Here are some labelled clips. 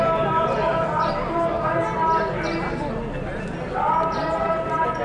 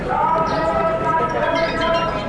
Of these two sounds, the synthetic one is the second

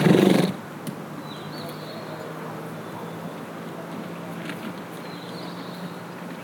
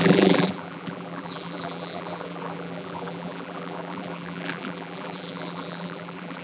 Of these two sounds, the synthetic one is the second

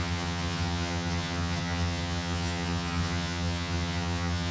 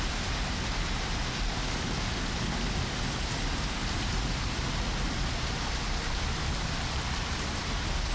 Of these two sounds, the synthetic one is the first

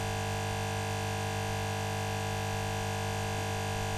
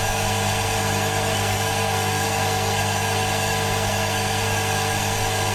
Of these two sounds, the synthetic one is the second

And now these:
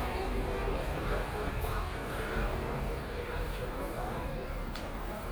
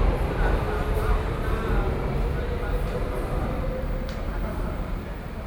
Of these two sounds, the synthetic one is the first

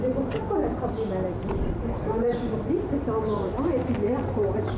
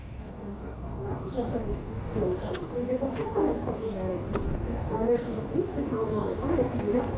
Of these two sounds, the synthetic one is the second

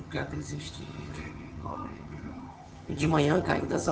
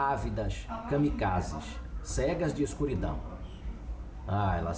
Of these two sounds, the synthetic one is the first